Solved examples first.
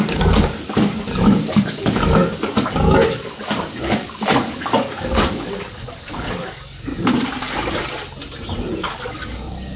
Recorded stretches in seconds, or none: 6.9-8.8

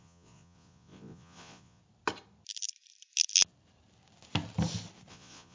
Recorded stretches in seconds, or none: 1.8-5.1

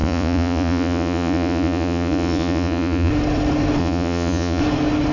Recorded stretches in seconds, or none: 3.1-3.8; 4.6-5.1

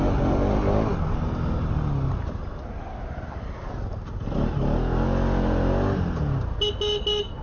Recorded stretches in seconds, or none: 0.0-7.4

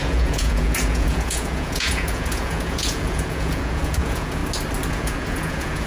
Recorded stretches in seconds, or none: 4.4-4.9

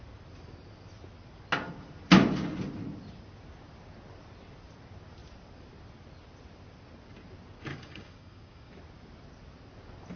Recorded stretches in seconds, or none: 0.0-7.7; 8.7-10.2